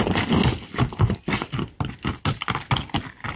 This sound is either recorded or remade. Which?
recorded